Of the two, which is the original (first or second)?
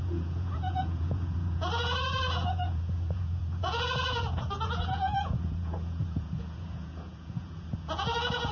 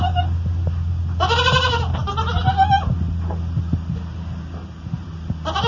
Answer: second